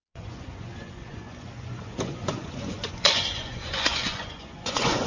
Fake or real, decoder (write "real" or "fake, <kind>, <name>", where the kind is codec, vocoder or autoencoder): fake, vocoder, Vocos